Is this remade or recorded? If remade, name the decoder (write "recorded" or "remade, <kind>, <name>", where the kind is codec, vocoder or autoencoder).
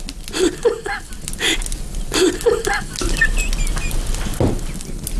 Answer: recorded